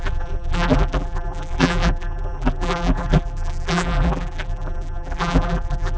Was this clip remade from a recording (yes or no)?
yes